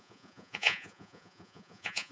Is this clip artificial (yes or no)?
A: yes